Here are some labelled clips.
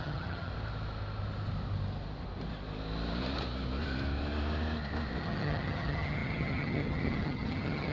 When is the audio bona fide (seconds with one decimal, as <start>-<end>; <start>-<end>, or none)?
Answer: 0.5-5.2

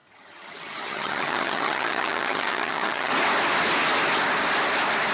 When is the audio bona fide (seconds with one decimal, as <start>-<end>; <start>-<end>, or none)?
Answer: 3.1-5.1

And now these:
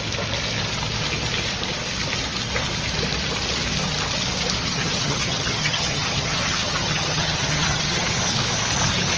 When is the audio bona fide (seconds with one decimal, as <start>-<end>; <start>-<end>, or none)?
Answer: 0.0-4.6; 8.1-9.2

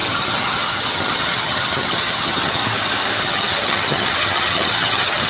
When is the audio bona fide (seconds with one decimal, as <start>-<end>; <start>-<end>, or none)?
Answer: 2.6-3.2

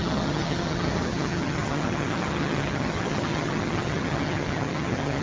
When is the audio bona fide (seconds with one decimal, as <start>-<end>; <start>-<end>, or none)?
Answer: none